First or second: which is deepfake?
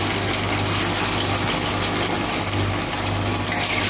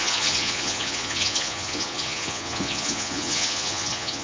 second